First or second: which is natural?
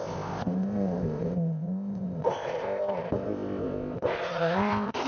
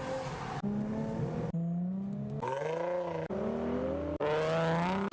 second